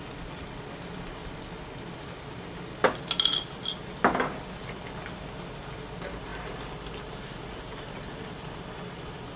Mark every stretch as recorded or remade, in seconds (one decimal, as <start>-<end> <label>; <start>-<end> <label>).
0.0-9.4 recorded